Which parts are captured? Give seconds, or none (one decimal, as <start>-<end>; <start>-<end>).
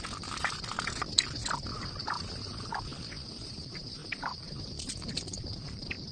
1.4-3.3